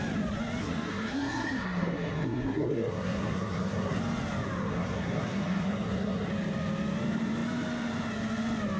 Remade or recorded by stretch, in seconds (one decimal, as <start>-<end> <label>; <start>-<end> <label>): 0.0-0.6 recorded; 0.6-4.0 remade; 4.0-4.7 recorded; 4.7-6.3 remade; 6.3-8.8 recorded